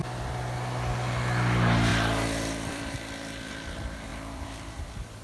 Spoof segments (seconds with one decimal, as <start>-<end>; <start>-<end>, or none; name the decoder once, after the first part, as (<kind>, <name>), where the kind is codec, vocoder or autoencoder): 1.9-3.5 (vocoder, BigVGAN v2); 4.1-4.8